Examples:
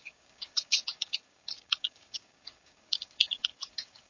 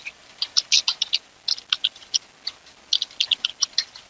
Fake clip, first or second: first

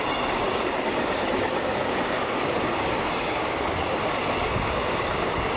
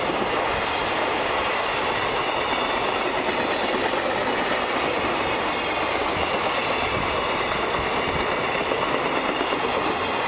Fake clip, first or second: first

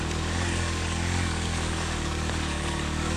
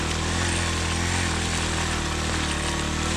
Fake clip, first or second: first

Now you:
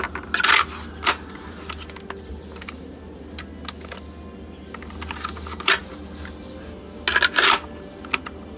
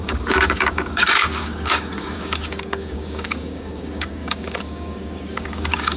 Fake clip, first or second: second